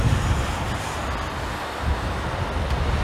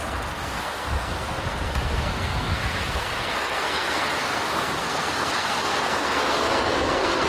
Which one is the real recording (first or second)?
first